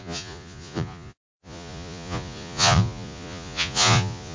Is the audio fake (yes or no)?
yes